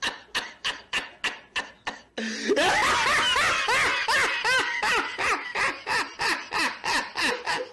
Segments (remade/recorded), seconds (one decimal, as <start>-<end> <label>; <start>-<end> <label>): 0.0-7.7 recorded